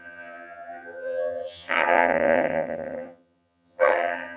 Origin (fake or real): fake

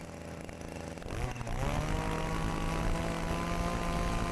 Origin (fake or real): real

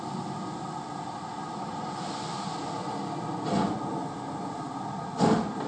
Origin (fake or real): real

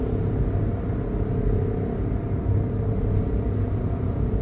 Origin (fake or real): real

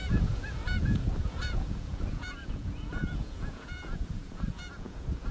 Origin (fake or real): fake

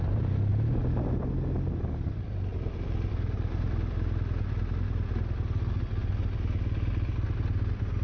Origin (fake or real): real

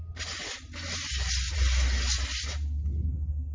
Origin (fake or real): real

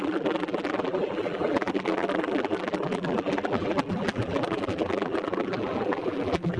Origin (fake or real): fake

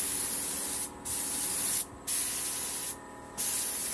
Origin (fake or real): real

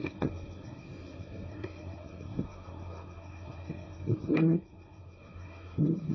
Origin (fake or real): fake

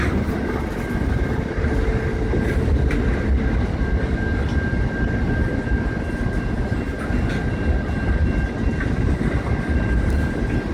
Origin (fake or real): real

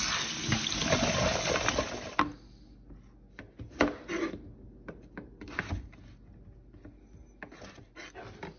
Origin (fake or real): real